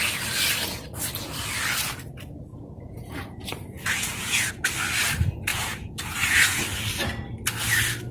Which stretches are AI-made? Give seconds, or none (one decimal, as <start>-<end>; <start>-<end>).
2.5-4.5; 5.5-6.6